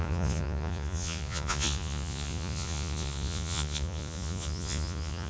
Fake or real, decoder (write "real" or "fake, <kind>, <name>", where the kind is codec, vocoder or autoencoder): fake, vocoder, Vocos